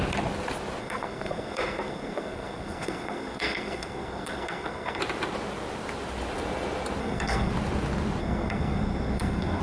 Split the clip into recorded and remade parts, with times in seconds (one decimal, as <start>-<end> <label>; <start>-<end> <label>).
0.0-0.8 recorded; 0.8-5.0 remade; 5.0-7.0 recorded; 7.0-7.5 remade; 7.5-8.2 recorded; 8.2-9.6 remade